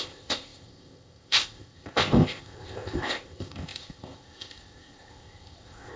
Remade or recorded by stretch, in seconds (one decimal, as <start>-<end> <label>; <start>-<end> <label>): 0.0-6.0 remade